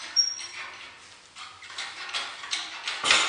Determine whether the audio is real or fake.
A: real